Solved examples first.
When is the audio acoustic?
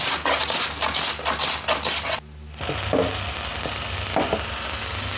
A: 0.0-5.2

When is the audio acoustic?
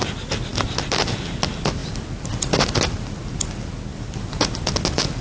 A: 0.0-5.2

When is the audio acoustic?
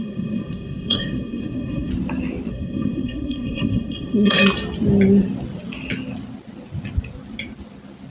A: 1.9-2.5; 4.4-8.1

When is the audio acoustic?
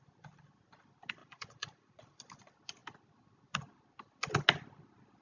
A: 0.0-1.2; 2.0-5.2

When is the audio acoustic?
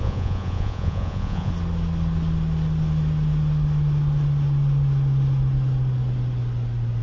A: 1.5-7.0